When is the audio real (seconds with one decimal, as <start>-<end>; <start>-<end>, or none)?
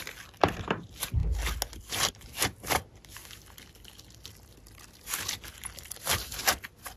1.2-2.1; 3.2-5.7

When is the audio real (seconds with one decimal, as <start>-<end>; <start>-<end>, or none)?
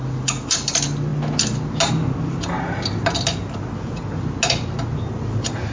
0.0-5.7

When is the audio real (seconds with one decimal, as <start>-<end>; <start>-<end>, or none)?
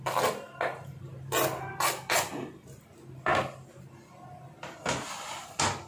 0.0-5.9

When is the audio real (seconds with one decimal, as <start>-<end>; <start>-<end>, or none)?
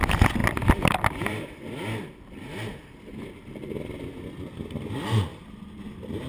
0.0-0.4; 1.4-6.3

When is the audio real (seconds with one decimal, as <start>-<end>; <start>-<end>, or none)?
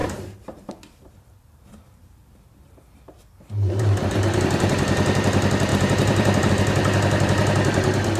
4.4-5.7; 6.5-8.2